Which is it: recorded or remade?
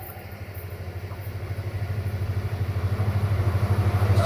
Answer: recorded